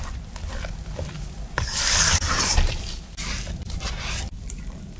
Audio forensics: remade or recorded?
remade